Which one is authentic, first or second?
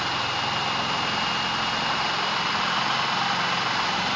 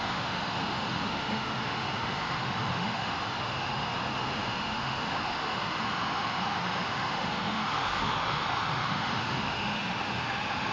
first